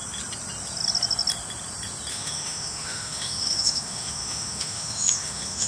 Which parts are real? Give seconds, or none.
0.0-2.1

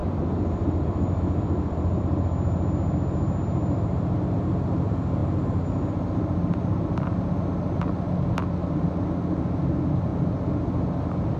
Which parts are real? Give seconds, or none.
2.0-11.4